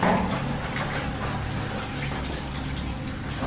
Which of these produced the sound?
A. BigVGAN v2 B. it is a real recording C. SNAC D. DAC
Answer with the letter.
B